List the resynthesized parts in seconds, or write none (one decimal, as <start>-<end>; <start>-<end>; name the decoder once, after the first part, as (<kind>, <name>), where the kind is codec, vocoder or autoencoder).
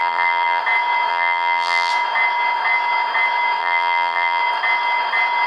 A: 0.0-0.6 (vocoder, BigVGAN v2); 1.1-1.9; 3.6-4.4